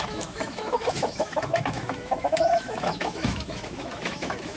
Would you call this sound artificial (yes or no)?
yes